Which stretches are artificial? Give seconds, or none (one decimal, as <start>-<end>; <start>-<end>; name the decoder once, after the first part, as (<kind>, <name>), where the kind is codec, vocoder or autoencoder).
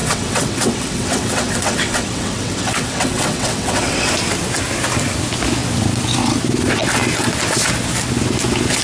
0.0-4.1 (vocoder, WaveNeXt)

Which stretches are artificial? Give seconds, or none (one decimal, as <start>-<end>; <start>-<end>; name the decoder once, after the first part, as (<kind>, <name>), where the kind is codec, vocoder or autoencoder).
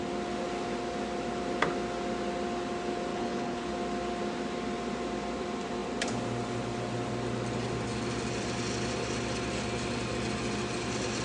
3.1-3.7 (codec, HILCodec)